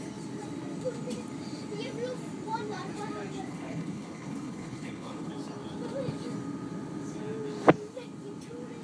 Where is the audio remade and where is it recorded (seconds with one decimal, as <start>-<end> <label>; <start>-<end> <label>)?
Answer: 0.0-3.5 recorded; 3.5-5.3 remade; 5.3-8.8 recorded